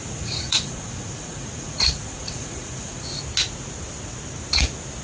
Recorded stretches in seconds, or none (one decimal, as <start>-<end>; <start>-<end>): 3.0-5.0